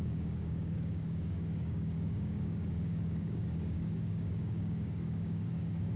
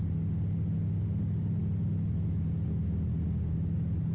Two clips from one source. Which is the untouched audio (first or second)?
second